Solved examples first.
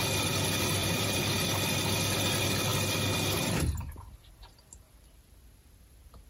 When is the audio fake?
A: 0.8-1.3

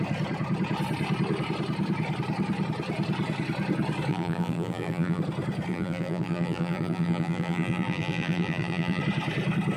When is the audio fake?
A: 4.1-5.2; 5.7-9.0

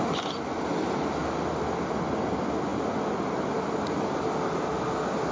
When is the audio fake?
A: none

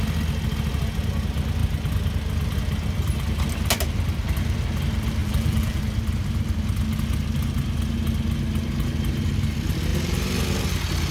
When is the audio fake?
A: 5.2-5.8

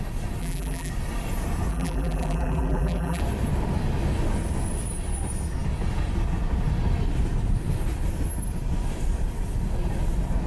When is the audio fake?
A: 0.4-0.9; 1.7-3.2

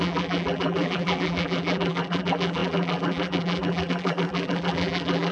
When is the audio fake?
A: 0.0-5.3

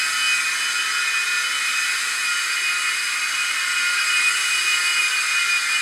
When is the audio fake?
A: none